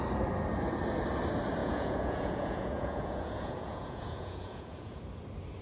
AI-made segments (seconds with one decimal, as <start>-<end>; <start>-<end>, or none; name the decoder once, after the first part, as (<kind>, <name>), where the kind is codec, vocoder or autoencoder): 1.6-5.0 (vocoder, Vocos)